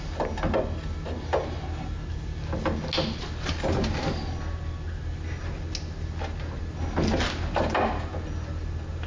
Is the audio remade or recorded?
recorded